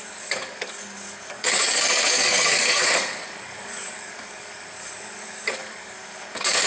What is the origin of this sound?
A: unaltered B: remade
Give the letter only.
B